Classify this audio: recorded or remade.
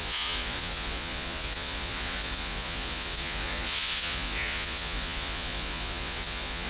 remade